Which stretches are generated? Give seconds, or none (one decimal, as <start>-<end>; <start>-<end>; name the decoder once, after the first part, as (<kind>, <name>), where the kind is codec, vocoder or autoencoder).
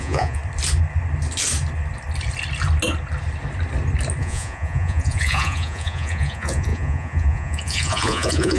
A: 0.0-0.4 (vocoder, Vocos); 4.2-8.6